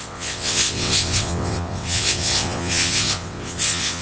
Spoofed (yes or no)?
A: yes